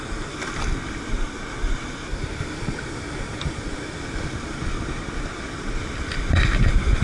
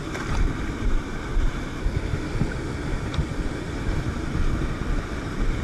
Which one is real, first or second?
first